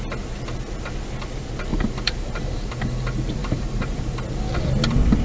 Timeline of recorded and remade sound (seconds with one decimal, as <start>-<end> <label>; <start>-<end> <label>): 0.0-1.7 recorded; 1.7-2.9 remade; 2.9-3.4 recorded; 3.4-4.2 remade; 4.2-5.2 recorded